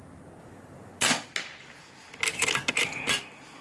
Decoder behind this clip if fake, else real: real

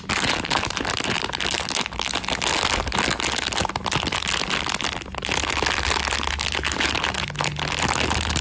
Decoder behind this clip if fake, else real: real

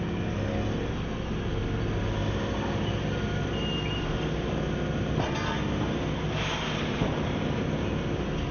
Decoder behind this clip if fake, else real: real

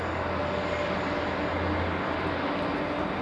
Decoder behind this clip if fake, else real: real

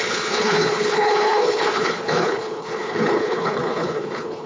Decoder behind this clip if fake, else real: fake, codec, HILCodec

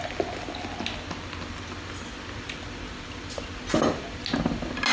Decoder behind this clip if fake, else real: real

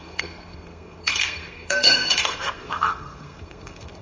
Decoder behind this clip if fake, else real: fake, codec, SNAC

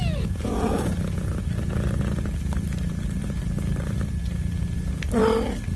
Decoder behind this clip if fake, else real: real